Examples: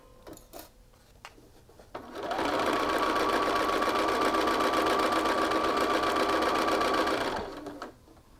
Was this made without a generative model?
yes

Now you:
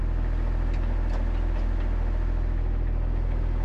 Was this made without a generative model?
yes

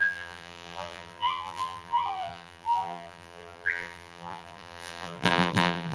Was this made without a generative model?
no